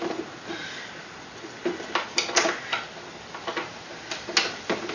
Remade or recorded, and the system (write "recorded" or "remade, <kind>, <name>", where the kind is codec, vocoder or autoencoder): recorded